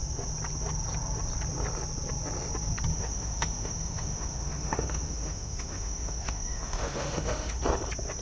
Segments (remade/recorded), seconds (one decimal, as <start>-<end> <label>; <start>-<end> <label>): 0.0-2.9 recorded; 2.9-7.6 remade; 7.6-8.2 recorded